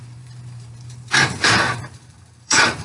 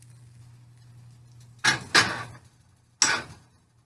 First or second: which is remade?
first